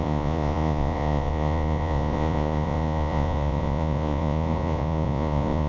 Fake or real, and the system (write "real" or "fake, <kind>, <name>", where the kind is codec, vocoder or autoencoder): fake, vocoder, Vocos